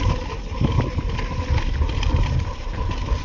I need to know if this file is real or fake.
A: real